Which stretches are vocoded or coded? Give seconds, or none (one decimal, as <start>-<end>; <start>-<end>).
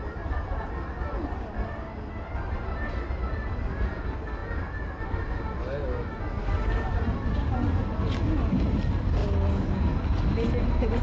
none